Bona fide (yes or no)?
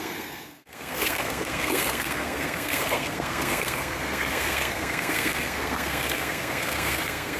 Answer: no